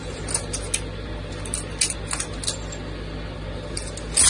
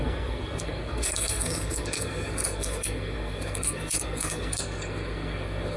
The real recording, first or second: first